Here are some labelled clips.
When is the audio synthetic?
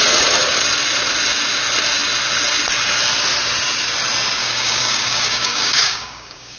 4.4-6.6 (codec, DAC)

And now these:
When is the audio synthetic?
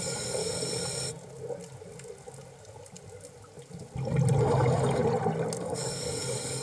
0.0-0.4 (codec, DAC); 4.4-5.0; 5.6-6.6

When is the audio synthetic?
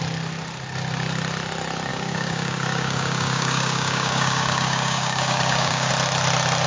1.9-5.9 (codec, DAC)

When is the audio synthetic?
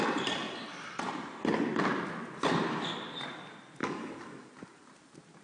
3.8-4.5 (codec, DAC)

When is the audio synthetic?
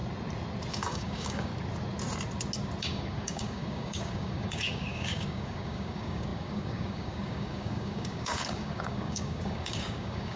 0.7-1.5 (codec, DAC); 2.8-10.4